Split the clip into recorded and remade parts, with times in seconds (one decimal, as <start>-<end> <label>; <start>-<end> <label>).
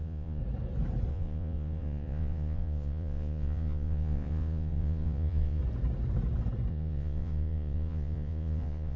0.0-0.4 remade; 0.4-1.1 recorded; 1.1-5.6 remade; 5.6-6.7 recorded; 6.7-9.0 remade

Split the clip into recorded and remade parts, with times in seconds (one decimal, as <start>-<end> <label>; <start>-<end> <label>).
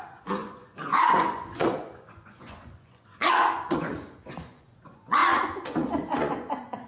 0.0-6.9 remade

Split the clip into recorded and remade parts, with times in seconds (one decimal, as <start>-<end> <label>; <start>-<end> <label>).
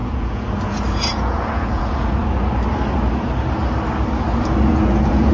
0.0-2.2 remade; 2.2-4.7 recorded; 4.7-5.3 remade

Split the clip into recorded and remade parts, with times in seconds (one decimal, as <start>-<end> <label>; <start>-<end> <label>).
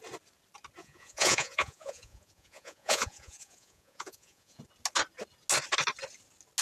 0.0-0.8 recorded; 0.8-4.6 remade; 4.6-6.6 recorded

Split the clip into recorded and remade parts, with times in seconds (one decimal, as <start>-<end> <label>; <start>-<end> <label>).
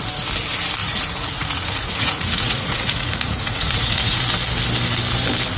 0.0-0.8 recorded; 0.8-4.2 remade; 4.2-5.6 recorded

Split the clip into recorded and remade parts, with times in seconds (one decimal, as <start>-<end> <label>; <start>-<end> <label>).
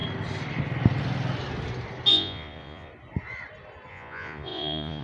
0.0-2.1 recorded; 2.1-2.9 remade; 2.9-3.9 recorded; 3.9-5.0 remade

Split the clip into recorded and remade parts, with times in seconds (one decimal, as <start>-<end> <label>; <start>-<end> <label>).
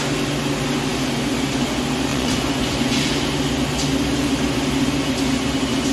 0.0-2.1 recorded; 2.1-3.1 remade; 3.1-5.9 recorded